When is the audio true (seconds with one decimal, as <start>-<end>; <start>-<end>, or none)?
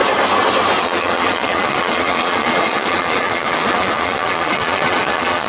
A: 0.0-0.8